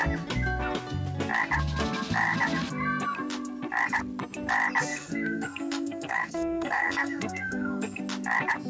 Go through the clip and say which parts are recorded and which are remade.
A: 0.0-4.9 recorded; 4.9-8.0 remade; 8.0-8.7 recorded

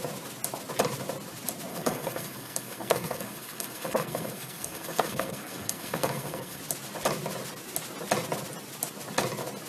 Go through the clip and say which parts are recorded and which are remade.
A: 0.0-1.7 recorded; 1.7-6.6 remade; 6.6-9.7 recorded

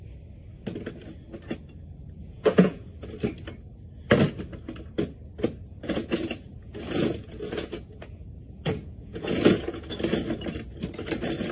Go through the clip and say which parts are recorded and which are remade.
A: 0.0-2.2 recorded; 2.2-2.9 remade; 2.9-5.7 recorded; 5.7-9.9 remade; 9.9-11.5 recorded

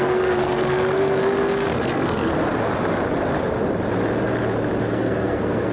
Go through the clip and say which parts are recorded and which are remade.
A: 0.0-2.3 remade; 2.3-4.8 recorded; 4.8-5.7 remade

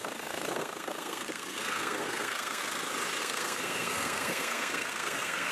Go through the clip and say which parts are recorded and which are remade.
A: 0.0-2.6 remade; 2.6-3.2 recorded; 3.2-5.5 remade